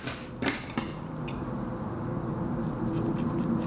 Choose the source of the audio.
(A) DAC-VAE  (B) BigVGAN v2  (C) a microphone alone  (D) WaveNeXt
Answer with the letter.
B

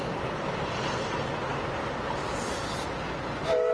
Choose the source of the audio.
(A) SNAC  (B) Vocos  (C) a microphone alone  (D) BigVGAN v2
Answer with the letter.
C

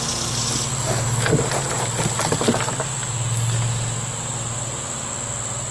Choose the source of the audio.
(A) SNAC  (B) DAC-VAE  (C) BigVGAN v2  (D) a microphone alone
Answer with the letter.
D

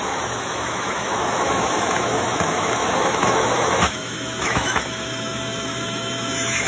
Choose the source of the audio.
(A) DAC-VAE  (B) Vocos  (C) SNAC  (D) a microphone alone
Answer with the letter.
A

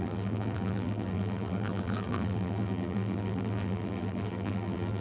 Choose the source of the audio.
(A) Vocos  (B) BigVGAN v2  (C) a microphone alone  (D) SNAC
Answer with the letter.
B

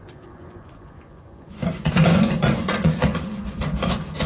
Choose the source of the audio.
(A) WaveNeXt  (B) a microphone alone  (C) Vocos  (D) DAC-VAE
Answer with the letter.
C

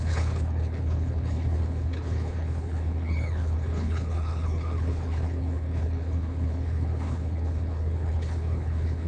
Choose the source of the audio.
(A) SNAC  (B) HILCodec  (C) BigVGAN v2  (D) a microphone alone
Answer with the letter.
B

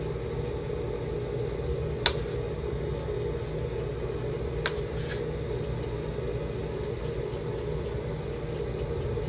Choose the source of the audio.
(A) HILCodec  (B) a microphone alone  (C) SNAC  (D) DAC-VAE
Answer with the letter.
B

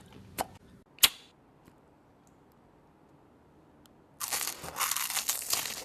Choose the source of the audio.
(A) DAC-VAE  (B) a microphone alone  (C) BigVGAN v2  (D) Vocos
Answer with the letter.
B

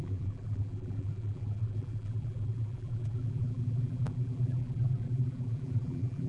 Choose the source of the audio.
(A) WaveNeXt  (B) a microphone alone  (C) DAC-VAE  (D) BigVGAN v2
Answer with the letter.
D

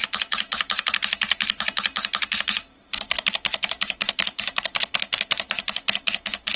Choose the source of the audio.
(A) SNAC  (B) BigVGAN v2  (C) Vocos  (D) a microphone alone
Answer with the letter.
B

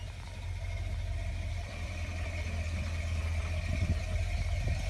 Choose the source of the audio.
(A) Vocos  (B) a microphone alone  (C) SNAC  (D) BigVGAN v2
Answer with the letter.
B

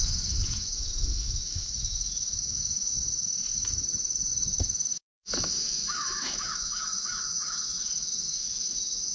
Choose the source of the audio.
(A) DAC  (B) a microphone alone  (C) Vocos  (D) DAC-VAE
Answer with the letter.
D